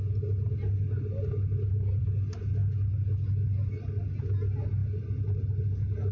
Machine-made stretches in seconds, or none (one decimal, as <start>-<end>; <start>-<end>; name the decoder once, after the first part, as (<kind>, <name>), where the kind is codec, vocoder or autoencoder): none